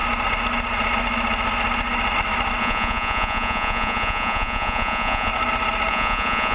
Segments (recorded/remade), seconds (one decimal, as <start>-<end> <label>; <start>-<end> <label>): 0.0-2.6 recorded; 2.6-5.3 remade; 5.3-5.9 recorded; 5.9-6.5 remade